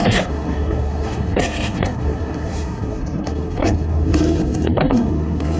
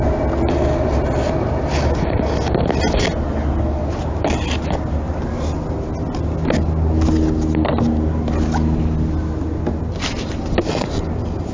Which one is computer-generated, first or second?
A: first